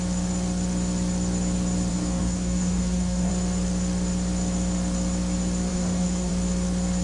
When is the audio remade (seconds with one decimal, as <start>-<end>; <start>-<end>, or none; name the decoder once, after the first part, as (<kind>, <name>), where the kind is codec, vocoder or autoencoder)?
1.9-3.3 (codec, DAC); 5.7-6.3